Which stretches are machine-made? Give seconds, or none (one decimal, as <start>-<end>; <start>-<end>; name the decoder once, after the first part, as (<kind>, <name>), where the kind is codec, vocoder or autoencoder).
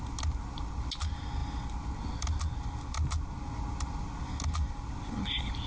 none